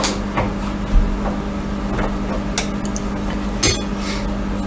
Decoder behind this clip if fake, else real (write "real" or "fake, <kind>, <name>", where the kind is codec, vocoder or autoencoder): real